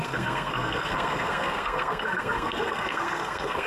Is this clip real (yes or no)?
no